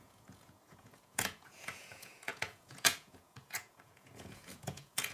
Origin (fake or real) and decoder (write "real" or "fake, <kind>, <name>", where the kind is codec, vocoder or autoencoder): fake, vocoder, Vocos